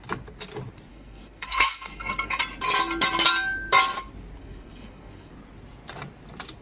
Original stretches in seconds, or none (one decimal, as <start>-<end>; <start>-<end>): 0.0-0.9; 2.4-4.4; 5.3-6.6